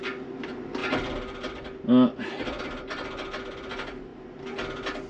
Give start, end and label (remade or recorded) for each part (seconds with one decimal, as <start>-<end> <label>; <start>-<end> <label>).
0.0-5.1 recorded

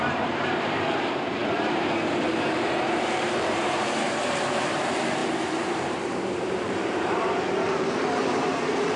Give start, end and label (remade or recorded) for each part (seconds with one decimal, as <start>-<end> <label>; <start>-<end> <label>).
0.0-9.0 remade

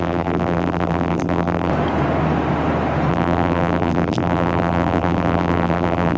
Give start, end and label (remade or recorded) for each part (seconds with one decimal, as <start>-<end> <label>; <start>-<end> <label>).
0.0-1.7 remade; 1.7-3.1 recorded; 3.1-6.2 remade

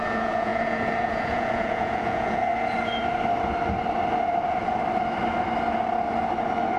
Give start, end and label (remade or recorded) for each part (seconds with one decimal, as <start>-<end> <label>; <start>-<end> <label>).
0.0-2.5 remade; 2.5-6.8 recorded